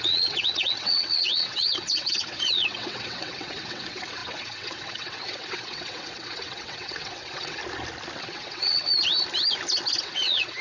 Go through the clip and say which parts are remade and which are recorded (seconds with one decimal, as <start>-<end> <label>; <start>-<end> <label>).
0.0-7.6 remade; 7.6-8.2 recorded; 8.2-8.9 remade; 8.9-10.0 recorded; 10.0-10.6 remade